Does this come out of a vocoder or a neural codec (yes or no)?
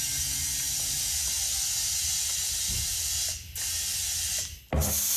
no